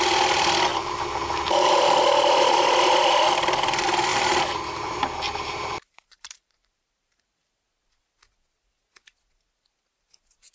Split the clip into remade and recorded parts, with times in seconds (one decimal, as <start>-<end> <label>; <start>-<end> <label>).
0.0-0.7 recorded; 0.7-1.7 remade; 1.7-4.1 recorded; 4.1-7.5 remade; 7.5-10.5 recorded